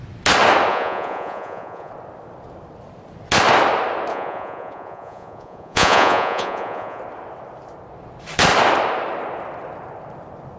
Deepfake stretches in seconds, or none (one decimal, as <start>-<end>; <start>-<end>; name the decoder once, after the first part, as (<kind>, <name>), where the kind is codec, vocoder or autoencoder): 0.7-1.9 (vocoder, Vocos); 4.1-7.0